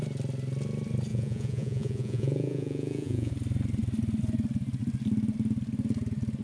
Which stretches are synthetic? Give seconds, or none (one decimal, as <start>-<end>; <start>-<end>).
1.1-3.3